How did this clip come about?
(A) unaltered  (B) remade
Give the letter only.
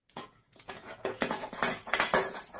B